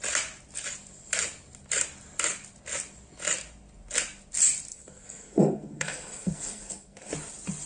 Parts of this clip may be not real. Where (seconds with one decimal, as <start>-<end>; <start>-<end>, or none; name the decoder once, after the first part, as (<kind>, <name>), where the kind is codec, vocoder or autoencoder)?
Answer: 4.7-7.1 (codec, SNAC)